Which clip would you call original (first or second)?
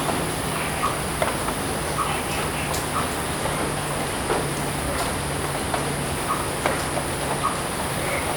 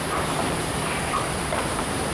first